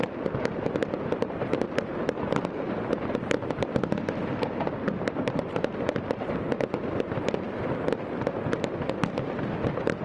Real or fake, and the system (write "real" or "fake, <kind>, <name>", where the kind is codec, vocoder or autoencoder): fake, vocoder, BigVGAN v2